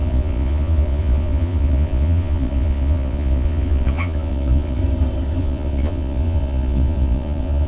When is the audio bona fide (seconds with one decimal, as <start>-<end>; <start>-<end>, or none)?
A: 4.8-5.4